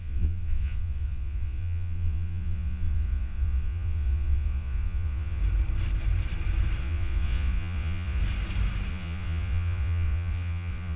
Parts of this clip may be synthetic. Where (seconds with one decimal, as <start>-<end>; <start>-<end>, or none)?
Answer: 0.0-5.4; 6.8-8.2; 8.9-11.0